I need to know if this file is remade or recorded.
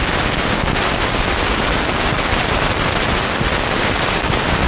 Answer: recorded